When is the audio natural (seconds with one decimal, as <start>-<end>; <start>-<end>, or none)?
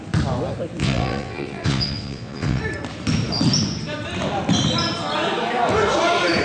0.0-0.8; 2.6-6.4